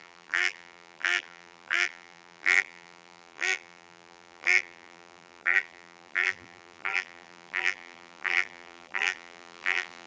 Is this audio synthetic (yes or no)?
yes